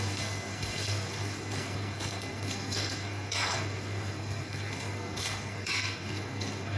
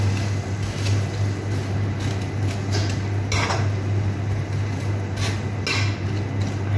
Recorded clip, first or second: second